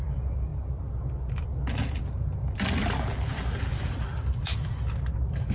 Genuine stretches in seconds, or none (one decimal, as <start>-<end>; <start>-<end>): 0.5-1.3